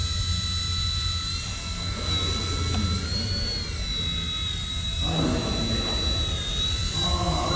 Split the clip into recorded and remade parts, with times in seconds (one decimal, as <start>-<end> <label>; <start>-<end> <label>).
0.0-7.6 recorded